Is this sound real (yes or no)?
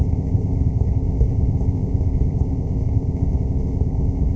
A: no